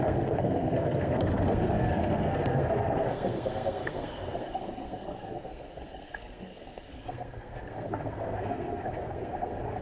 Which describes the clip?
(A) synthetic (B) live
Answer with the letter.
A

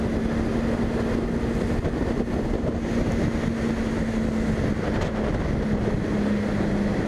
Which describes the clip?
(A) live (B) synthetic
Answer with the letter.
A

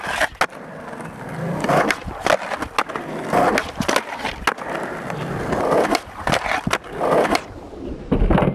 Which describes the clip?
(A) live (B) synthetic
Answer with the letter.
A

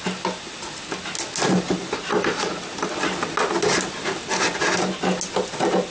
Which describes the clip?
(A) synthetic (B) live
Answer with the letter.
B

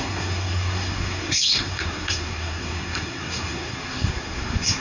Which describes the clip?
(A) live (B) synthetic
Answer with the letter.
B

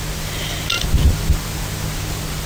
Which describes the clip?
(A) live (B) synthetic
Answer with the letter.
A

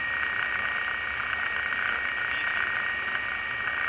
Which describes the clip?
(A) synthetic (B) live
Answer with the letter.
B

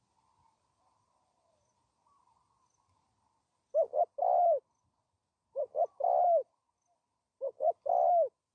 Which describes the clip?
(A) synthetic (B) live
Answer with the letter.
B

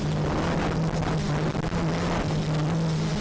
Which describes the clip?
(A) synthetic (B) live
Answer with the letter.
B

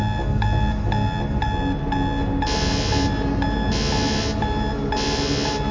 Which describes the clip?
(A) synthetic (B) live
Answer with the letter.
B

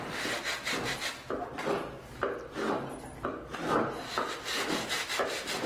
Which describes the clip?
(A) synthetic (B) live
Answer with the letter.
B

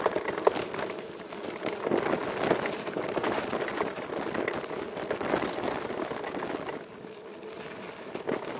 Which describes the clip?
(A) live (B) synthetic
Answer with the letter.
A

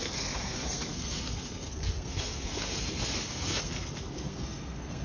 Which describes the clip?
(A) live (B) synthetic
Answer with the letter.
B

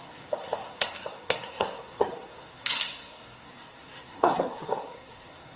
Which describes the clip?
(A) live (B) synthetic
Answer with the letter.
B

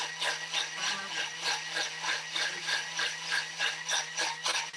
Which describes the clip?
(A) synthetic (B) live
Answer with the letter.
B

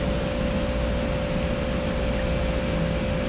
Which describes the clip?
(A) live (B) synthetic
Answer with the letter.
A